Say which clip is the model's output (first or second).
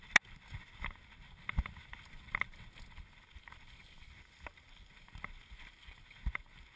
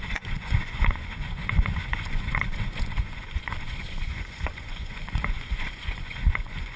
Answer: second